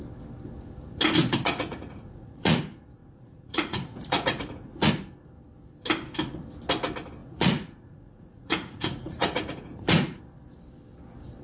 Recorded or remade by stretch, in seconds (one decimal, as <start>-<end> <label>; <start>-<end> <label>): 0.0-1.2 recorded; 1.2-2.6 remade; 2.6-3.0 recorded; 3.0-4.9 remade; 4.9-7.2 recorded; 7.2-10.2 remade; 10.2-11.4 recorded